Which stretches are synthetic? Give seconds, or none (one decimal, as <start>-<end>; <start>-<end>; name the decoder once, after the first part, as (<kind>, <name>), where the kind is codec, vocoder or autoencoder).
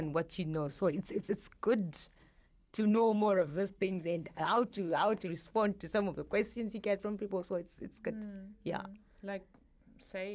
0.7-1.3 (codec, HILCodec); 2.1-5.3